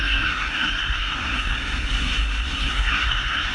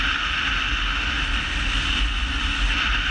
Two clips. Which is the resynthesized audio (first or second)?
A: first